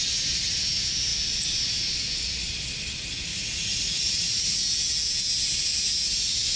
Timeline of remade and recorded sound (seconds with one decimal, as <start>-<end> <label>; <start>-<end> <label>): 0.0-3.3 recorded; 3.3-4.6 remade; 4.6-6.6 recorded